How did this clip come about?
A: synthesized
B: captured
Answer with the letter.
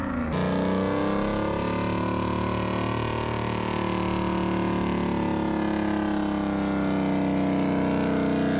B